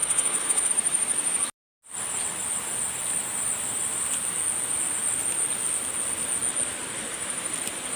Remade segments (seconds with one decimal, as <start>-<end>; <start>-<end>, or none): 0.0-0.7